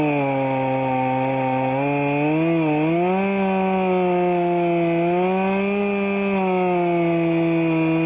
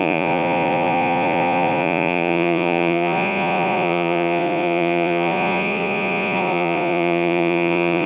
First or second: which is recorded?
first